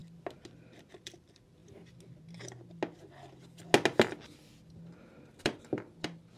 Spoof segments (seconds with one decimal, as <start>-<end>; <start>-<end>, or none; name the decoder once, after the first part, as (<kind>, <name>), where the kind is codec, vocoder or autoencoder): 1.0-1.6 (vocoder, BigVGAN v2); 5.4-6.4